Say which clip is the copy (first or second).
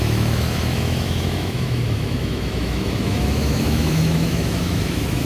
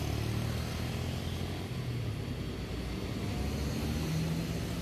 first